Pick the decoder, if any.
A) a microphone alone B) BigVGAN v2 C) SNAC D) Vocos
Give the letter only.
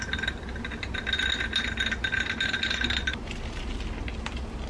A